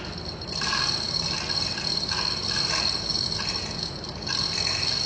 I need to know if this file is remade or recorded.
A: recorded